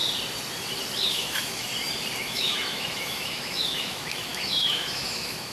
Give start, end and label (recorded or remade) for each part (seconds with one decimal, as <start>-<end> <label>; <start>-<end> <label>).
0.0-1.1 recorded; 1.1-1.7 remade; 1.7-2.2 recorded; 2.2-5.5 remade